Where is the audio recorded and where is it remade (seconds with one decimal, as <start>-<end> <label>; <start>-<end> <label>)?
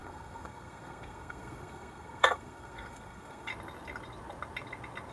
0.0-3.5 remade; 3.5-5.1 recorded